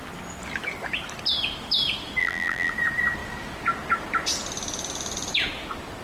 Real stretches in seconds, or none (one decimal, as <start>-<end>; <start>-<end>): 0.0-2.2; 2.7-6.0